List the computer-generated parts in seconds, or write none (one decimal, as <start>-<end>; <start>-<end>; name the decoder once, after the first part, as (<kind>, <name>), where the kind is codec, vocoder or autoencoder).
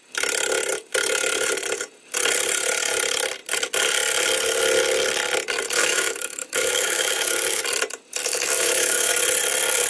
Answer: 5.8-7.6 (autoencoder, DAC-VAE); 8.2-9.1